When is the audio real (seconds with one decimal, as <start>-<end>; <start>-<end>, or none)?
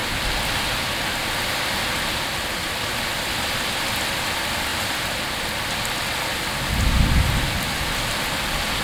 0.0-8.8